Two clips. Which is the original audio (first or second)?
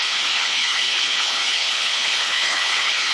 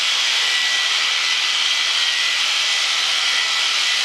second